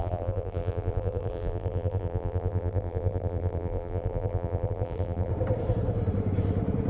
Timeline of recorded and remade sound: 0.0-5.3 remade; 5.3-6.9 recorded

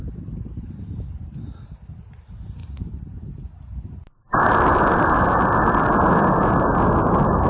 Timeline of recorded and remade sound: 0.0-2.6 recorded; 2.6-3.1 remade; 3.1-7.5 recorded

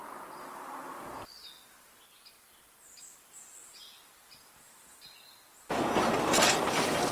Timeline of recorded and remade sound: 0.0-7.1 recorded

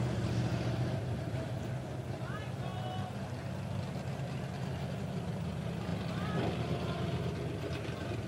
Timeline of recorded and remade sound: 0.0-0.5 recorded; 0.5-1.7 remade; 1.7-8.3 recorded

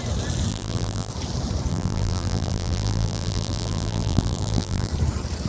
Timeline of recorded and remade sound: 0.0-0.5 recorded; 0.5-1.1 remade; 1.1-1.7 recorded; 1.7-4.9 remade; 4.9-5.5 recorded